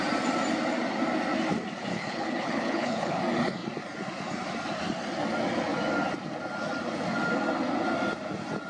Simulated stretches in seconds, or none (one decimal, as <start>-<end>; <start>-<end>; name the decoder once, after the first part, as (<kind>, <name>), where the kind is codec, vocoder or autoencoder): 1.9-3.2 (codec, HILCodec)